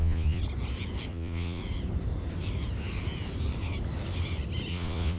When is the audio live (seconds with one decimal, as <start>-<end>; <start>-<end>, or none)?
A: 0.4-1.1; 1.6-4.7